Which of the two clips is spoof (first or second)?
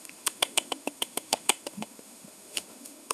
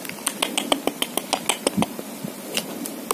first